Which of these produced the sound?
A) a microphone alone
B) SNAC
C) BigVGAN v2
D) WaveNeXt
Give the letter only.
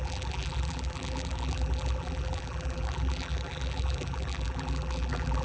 C